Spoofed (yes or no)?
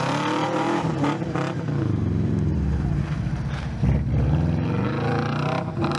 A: yes